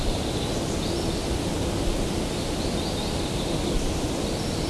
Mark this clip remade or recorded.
recorded